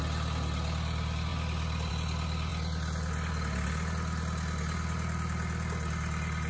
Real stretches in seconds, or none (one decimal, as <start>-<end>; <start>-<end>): 0.0-6.5